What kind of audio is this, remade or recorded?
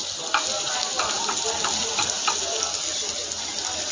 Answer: recorded